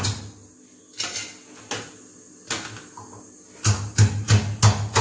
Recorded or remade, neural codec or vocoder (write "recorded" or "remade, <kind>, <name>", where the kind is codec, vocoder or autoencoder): recorded